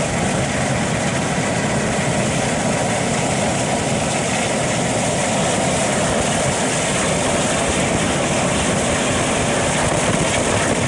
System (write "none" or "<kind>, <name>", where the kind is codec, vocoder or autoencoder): none